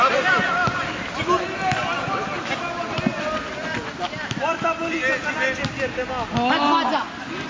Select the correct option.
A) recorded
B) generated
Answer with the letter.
A